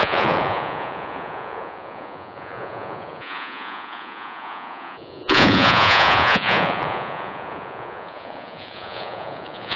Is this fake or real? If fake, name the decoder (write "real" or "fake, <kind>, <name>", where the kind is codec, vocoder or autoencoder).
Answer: fake, vocoder, Vocos